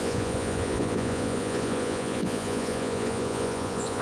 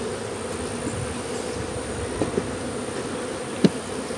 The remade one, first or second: first